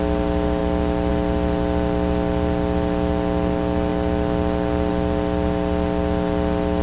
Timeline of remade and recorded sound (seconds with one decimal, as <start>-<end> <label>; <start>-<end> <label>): 0.0-6.8 recorded